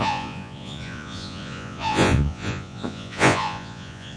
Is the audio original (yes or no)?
no